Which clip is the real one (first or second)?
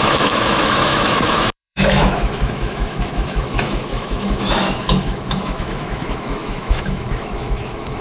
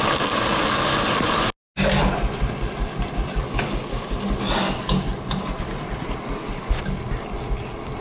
second